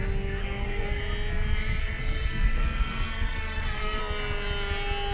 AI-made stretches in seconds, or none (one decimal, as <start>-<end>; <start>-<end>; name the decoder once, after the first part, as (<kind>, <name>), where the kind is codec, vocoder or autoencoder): 0.4-1.0 (codec, SNAC); 1.8-4.0